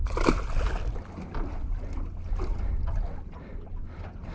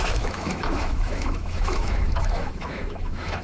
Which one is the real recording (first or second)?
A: first